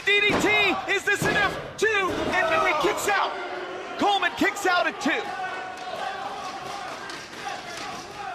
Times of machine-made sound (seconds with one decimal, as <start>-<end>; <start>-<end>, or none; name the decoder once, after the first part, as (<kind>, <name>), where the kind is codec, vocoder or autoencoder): 1.3-3.5 (codec, SNAC)

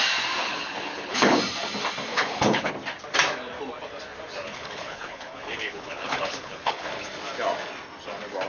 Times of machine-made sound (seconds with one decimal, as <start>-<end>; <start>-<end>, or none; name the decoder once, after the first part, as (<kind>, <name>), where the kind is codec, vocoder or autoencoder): 0.4-1.4 (codec, HILCodec); 2.1-2.7; 4.4-6.9

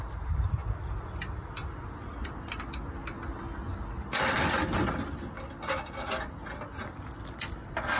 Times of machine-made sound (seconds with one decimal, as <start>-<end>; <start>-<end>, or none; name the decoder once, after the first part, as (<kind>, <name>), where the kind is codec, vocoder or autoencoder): none

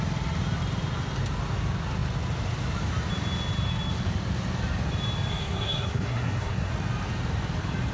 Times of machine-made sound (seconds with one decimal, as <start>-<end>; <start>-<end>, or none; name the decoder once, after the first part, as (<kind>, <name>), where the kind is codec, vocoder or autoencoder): 5.3-6.7 (codec, SNAC)

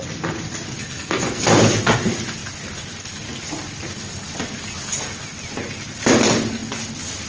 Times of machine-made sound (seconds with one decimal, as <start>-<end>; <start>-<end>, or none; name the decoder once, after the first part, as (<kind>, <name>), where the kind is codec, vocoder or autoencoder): 0.8-1.4 (codec, SNAC)

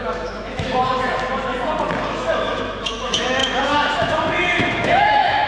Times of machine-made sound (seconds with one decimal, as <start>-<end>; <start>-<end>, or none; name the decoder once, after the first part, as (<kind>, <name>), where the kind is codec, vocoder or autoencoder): 0.0-0.8 (autoencoder, DAC-VAE); 2.1-5.5

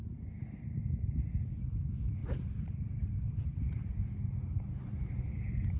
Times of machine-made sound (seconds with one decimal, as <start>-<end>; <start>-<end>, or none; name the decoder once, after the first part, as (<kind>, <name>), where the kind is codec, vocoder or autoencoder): 2.2-5.8 (vocoder, BigVGAN v2)